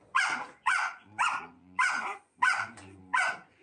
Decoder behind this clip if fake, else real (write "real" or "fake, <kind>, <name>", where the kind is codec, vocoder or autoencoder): fake, vocoder, Vocos